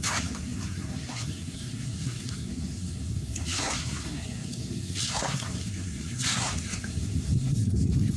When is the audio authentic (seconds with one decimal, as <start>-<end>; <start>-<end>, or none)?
none